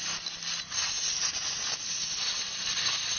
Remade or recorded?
recorded